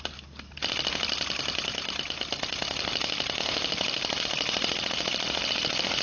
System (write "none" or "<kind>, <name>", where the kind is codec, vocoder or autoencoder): none